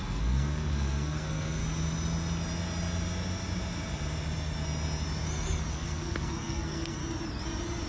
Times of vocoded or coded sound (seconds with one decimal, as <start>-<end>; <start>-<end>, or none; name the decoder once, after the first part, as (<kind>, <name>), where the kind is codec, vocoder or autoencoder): 0.0-1.6 (codec, SNAC); 5.7-7.0